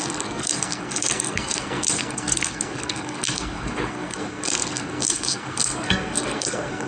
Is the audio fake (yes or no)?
yes